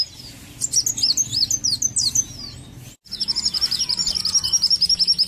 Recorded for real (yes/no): yes